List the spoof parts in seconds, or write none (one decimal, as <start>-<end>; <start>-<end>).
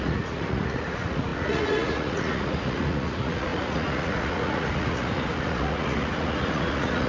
0.0-7.1